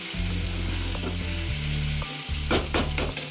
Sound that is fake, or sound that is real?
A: real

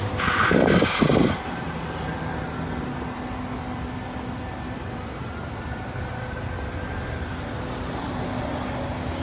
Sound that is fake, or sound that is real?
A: real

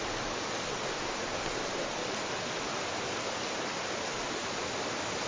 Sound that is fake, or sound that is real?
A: real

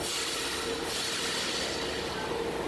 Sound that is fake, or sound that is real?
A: real